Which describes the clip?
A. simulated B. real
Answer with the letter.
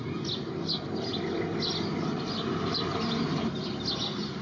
B